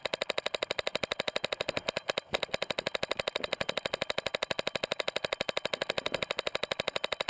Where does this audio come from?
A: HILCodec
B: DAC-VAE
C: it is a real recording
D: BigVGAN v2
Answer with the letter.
C